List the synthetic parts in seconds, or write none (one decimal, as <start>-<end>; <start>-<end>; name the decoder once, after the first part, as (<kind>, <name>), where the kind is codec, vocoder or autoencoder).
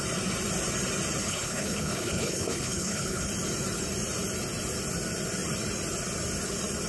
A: 1.2-3.3 (codec, HILCodec)